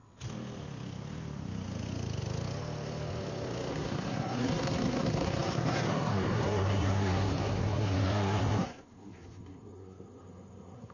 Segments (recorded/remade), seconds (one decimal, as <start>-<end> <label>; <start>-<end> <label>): 0.0-3.7 recorded; 3.7-10.9 remade